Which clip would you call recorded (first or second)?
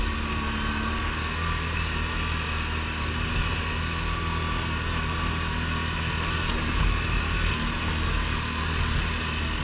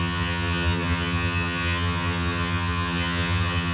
first